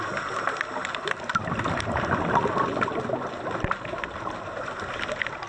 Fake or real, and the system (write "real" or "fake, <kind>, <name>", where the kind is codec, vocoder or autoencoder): real